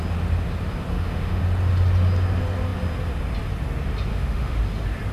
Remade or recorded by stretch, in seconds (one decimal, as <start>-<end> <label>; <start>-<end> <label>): 0.0-0.9 recorded; 0.9-1.4 remade; 1.4-4.1 recorded; 4.1-4.6 remade; 4.6-5.1 recorded